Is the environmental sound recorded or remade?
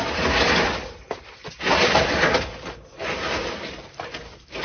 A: recorded